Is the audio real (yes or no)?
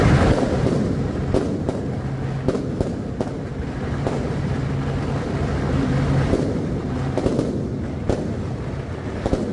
yes